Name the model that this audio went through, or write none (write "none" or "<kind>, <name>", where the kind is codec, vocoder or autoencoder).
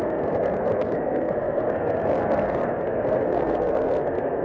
codec, SNAC